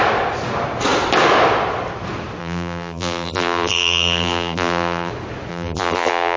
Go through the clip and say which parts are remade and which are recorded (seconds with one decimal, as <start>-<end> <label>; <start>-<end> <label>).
0.0-2.4 recorded; 2.4-5.1 remade; 5.1-5.5 recorded; 5.5-6.4 remade